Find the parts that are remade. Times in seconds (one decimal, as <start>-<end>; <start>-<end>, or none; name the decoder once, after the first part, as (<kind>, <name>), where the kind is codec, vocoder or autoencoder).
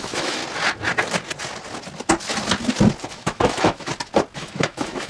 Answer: 0.0-0.4 (autoencoder, DAC-VAE); 3.1-3.9; 4.4-5.1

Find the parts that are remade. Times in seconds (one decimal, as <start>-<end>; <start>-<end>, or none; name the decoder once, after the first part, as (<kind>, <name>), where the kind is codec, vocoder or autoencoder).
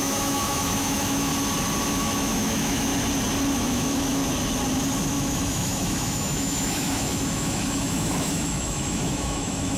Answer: 0.0-1.3 (autoencoder, DAC-VAE); 1.9-2.9; 3.5-4.2; 5.1-9.8